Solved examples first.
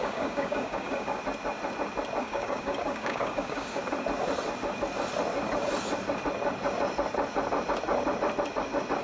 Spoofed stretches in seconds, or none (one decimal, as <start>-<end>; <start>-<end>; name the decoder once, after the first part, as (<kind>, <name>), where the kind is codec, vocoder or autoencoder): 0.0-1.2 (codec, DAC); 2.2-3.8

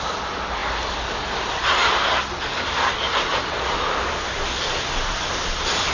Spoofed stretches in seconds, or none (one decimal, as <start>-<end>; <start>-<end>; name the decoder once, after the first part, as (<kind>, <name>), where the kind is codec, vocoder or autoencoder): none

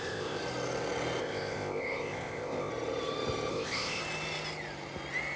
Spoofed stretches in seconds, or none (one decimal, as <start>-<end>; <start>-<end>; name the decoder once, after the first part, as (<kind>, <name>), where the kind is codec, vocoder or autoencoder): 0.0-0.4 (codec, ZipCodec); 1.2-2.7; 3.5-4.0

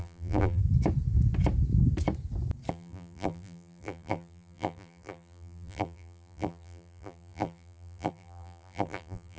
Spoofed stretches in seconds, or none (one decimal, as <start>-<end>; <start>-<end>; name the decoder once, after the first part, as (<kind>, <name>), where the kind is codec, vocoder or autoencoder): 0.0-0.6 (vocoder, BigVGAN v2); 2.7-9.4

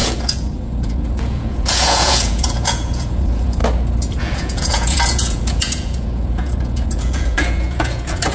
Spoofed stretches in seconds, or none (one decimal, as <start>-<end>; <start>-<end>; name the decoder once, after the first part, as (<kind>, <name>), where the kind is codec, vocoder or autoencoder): 0.0-3.6 (vocoder, Vocos); 4.2-8.3

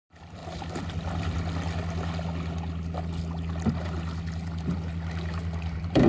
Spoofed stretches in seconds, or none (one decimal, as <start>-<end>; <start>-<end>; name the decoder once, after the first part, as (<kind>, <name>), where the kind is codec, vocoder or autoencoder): 0.0-0.4 (vocoder, BigVGAN v2); 3.7-6.1

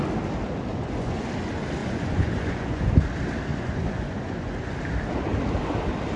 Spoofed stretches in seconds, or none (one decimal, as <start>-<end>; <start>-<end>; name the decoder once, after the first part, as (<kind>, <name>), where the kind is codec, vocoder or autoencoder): 0.7-1.3 (vocoder, Vocos); 1.8-2.9; 3.5-4.7